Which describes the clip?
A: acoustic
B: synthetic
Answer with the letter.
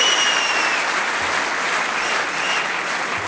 A